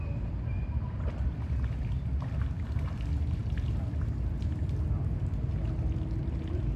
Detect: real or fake real